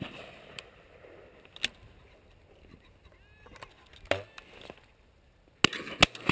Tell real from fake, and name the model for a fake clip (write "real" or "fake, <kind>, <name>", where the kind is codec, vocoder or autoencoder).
real